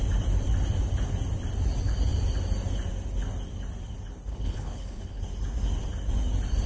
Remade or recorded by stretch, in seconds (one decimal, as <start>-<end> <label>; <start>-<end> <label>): 0.0-4.3 recorded; 4.3-5.2 remade; 5.2-6.7 recorded